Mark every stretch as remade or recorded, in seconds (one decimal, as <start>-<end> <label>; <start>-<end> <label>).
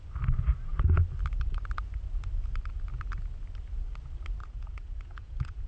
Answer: 0.0-4.4 recorded; 4.4-5.7 remade